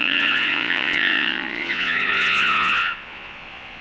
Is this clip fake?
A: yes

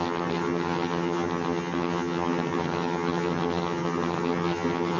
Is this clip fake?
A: yes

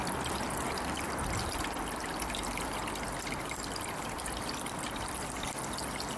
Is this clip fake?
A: yes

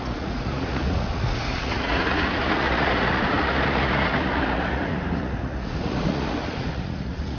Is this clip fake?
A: yes